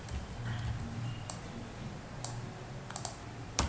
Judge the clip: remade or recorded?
recorded